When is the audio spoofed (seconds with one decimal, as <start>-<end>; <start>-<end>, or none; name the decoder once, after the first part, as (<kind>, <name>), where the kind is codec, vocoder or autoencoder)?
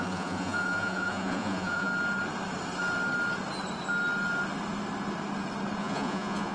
0.0-1.9 (vocoder, Vocos); 5.8-6.5